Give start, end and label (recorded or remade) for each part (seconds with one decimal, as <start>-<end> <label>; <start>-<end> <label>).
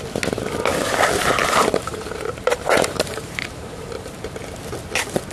0.0-1.4 recorded; 1.4-4.4 remade; 4.4-5.3 recorded